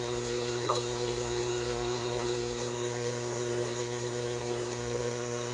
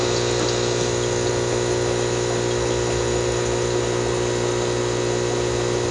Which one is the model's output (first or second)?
first